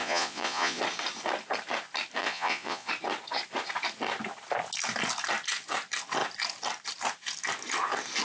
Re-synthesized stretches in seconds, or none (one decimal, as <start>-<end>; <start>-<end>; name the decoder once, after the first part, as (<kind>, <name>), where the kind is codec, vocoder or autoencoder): 0.0-0.8 (vocoder, Vocos); 2.2-2.9